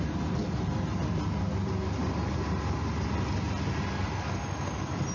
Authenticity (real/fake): real